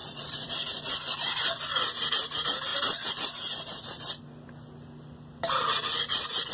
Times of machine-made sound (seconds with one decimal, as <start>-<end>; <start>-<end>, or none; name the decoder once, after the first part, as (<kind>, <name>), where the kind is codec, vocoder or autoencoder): 0.0-1.3 (vocoder, BigVGAN v2); 2.7-4.2